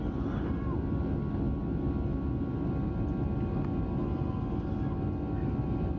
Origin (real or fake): real